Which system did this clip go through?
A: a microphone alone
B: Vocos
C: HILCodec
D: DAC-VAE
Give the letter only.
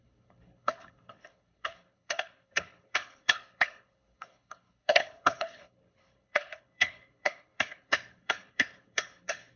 C